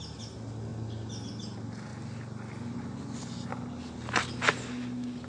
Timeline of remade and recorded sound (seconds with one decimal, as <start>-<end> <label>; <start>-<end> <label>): 0.0-5.3 recorded